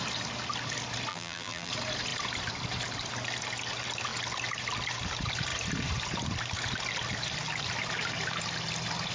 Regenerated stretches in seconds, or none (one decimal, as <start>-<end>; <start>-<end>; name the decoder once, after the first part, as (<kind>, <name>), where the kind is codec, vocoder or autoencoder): 1.1-1.7 (vocoder, BigVGAN v2)